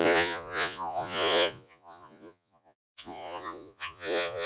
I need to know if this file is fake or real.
fake